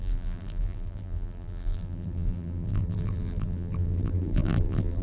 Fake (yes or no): yes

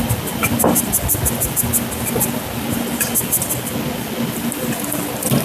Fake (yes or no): no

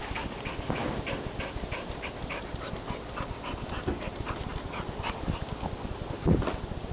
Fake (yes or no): no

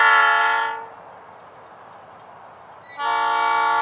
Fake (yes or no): no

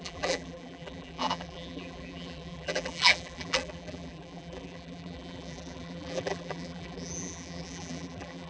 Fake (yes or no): yes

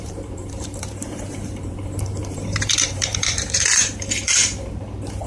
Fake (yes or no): yes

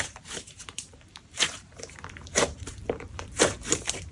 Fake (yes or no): yes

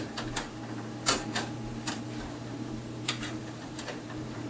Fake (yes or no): yes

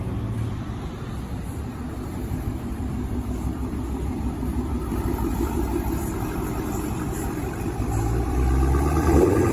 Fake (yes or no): yes